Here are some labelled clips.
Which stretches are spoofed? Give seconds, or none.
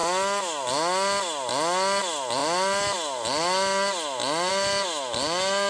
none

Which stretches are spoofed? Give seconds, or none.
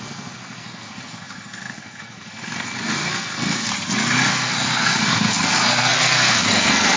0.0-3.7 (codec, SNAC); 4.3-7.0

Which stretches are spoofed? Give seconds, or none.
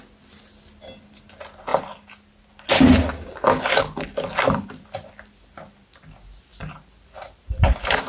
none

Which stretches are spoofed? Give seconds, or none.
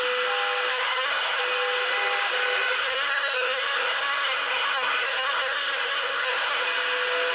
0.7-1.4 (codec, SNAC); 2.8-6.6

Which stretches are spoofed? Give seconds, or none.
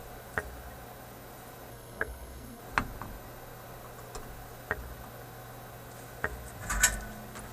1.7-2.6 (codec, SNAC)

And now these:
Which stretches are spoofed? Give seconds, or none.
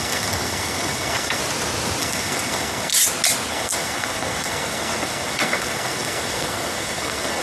0.0-1.4 (codec, SNAC); 2.0-2.9; 3.5-7.4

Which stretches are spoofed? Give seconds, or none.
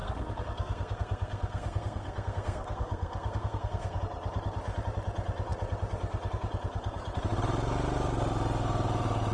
0.0-4.0 (codec, SNAC)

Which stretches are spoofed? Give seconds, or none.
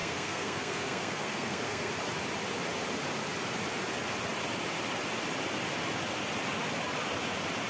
0.0-1.9 (codec, SNAC)